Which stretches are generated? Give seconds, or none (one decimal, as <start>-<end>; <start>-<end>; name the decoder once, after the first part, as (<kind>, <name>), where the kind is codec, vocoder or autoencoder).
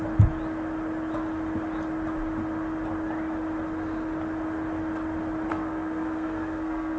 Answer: 5.5-7.0 (codec, SNAC)